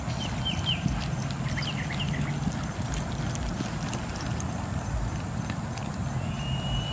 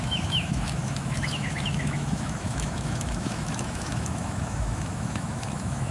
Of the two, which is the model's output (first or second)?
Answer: second